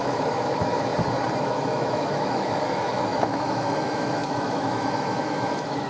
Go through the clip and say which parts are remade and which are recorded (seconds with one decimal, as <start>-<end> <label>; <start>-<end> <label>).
0.0-0.9 remade; 0.9-1.4 recorded; 1.4-5.9 remade